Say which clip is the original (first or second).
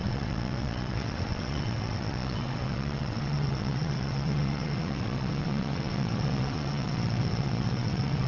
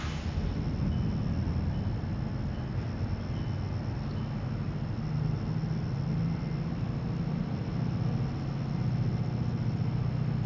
second